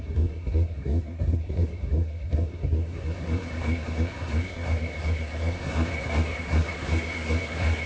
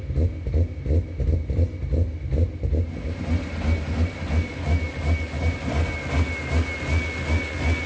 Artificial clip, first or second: first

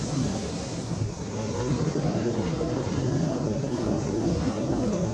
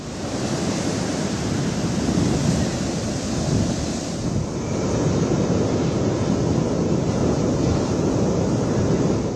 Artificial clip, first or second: first